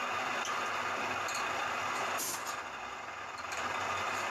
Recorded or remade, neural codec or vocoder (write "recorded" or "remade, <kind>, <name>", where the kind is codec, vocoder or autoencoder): recorded